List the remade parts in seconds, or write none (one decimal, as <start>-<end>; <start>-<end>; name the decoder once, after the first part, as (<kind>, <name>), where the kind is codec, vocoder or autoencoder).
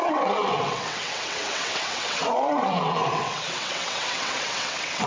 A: 0.0-5.1 (vocoder, WaveNeXt)